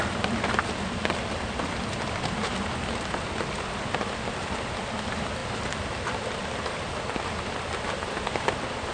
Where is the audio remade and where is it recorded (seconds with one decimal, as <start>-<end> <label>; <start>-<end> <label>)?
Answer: 0.0-8.9 recorded